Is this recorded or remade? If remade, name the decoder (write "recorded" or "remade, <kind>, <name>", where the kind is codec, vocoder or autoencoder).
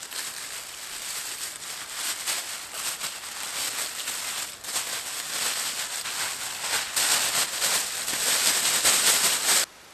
recorded